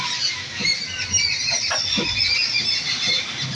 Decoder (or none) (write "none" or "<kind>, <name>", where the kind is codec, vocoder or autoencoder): none